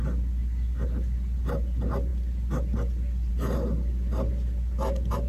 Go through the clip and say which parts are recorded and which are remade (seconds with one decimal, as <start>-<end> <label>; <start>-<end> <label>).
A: 0.0-5.3 recorded